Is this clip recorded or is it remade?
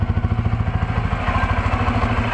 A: recorded